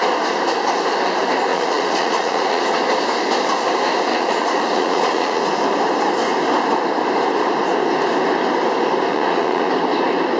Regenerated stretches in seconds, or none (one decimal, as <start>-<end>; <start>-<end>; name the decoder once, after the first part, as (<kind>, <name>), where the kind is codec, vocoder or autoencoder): 1.5-2.8 (vocoder, Vocos); 4.1-5.4; 9.1-9.7